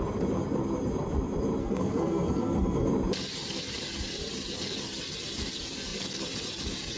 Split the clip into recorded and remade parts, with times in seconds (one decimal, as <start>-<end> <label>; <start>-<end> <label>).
0.0-1.6 recorded; 1.6-2.9 remade; 2.9-7.0 recorded